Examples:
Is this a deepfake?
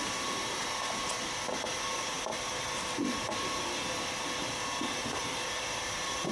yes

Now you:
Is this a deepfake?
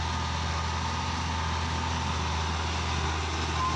no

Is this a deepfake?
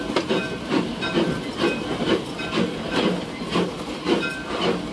no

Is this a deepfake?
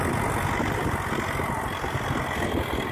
no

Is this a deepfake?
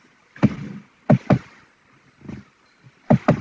no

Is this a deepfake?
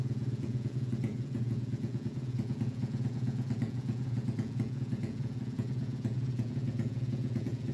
yes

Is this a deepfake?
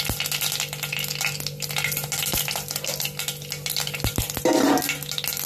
no